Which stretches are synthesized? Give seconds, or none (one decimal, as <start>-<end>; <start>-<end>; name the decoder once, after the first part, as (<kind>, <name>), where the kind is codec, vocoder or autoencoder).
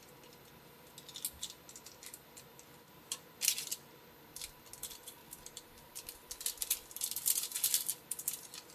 none